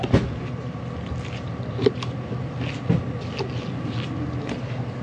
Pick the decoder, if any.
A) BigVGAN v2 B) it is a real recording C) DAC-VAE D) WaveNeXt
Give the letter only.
B